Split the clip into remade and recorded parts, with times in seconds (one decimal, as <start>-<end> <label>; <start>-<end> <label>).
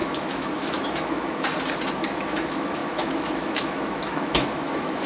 0.0-1.5 remade; 1.5-2.1 recorded; 2.1-5.1 remade